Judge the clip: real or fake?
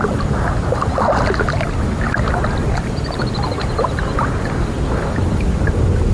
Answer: real